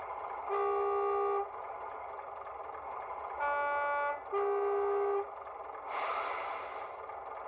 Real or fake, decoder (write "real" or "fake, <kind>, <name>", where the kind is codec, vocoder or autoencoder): real